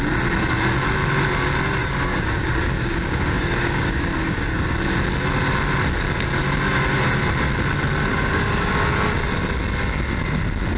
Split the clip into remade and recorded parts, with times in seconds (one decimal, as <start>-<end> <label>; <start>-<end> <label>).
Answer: 0.0-1.8 recorded; 1.8-4.6 remade; 4.6-8.1 recorded; 8.1-8.7 remade; 8.7-10.8 recorded